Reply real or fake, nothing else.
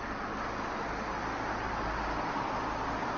real